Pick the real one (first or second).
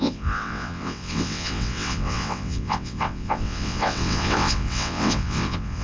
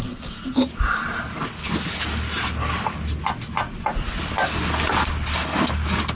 second